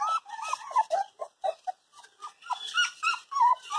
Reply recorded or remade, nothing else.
remade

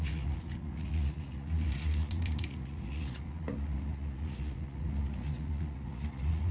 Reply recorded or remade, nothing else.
remade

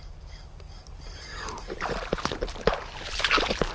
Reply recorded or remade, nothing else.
recorded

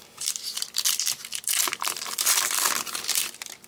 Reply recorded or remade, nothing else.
remade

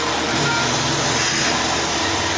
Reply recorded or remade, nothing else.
recorded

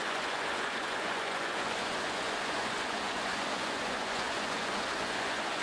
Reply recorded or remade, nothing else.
remade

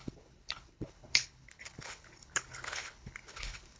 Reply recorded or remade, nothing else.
remade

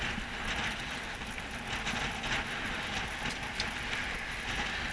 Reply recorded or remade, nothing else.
recorded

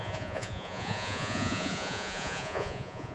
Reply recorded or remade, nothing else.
remade